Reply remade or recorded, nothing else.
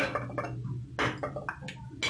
recorded